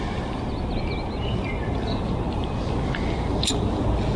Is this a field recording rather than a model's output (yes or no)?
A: yes